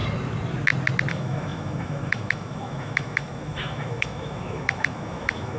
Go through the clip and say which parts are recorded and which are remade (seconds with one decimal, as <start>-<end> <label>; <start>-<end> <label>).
0.0-1.1 recorded; 1.1-5.6 remade